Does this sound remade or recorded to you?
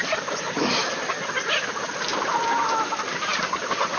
recorded